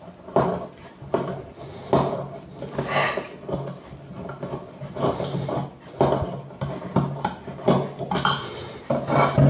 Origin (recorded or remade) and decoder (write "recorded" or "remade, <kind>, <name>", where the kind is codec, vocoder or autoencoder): recorded